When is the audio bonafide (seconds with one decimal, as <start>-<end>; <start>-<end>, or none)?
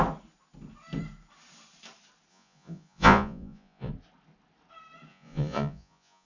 0.0-2.3; 3.9-5.1